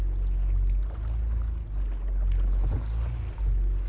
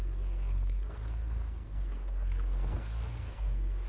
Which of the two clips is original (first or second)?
first